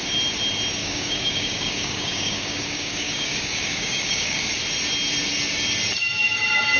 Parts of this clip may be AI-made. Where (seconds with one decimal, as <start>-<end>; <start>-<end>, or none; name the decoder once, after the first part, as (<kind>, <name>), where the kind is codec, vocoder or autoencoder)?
0.8-4.5 (codec, DAC)